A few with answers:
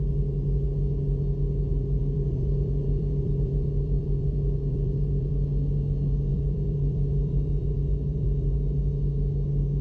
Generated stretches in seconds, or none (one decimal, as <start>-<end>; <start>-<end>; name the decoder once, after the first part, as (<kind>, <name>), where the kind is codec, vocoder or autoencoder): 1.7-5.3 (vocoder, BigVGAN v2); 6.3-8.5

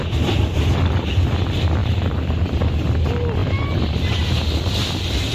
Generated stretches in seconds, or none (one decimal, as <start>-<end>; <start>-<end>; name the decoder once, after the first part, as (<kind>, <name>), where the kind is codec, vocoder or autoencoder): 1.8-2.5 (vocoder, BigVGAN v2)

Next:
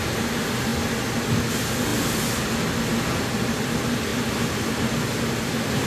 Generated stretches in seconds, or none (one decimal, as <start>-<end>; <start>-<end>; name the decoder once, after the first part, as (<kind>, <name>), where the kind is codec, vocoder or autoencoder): 0.0-0.7 (vocoder, BigVGAN v2); 1.5-1.9; 3.2-5.9